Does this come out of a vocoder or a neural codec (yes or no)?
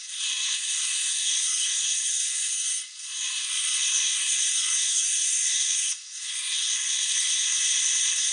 yes